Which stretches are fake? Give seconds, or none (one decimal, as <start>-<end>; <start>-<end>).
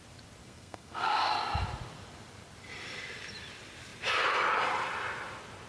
0.4-1.3